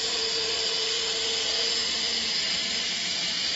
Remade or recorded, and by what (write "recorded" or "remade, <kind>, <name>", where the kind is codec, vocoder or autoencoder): recorded